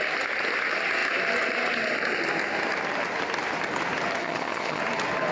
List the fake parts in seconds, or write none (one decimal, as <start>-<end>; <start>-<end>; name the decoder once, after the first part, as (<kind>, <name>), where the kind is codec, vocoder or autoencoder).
4.2-4.8 (vocoder, HiFi-GAN)